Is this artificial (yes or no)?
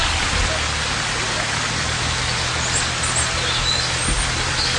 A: no